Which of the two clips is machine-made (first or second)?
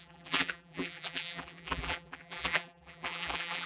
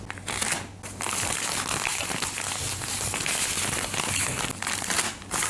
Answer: first